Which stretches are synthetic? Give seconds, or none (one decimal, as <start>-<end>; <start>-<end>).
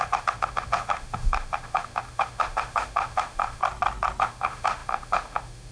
0.0-3.6; 4.2-5.7